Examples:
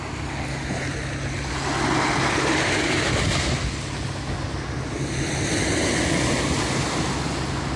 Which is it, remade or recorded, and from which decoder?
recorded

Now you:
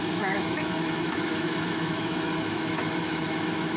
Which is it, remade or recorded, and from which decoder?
remade, autoencoder, DAC-VAE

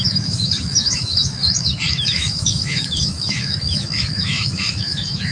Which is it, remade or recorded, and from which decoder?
remade, autoencoder, DAC-VAE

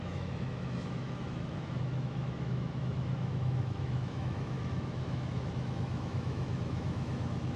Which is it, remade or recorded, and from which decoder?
remade, autoencoder, DAC-VAE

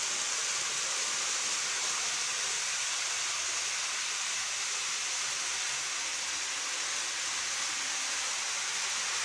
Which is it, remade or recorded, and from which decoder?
recorded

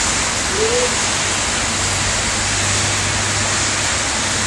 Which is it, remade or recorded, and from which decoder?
recorded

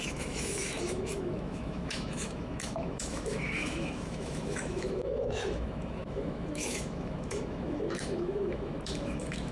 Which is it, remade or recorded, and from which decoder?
remade, autoencoder, DAC-VAE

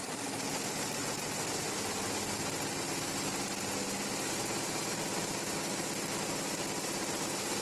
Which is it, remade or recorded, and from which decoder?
recorded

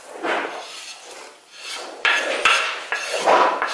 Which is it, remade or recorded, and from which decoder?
recorded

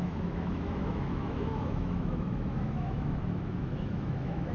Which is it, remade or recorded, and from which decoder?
remade, autoencoder, DAC-VAE